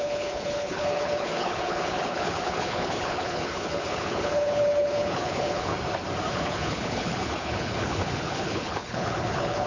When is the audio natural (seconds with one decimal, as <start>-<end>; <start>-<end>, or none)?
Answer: 5.7-6.3